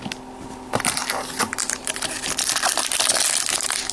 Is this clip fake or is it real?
real